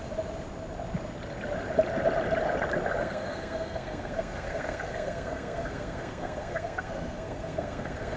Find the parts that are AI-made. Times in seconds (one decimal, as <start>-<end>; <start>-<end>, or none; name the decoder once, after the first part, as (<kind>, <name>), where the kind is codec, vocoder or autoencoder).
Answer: 3.0-8.2 (codec, SNAC)